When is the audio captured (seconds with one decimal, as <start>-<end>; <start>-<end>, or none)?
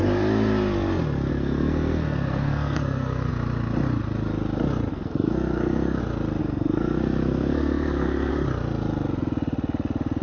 0.0-1.3; 3.3-4.9; 6.0-6.4; 8.3-10.2